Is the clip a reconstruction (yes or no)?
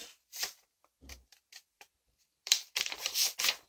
yes